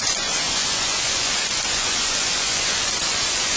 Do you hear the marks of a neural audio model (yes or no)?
yes